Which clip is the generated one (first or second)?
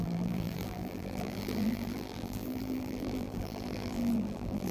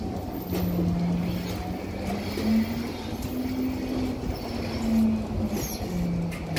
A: first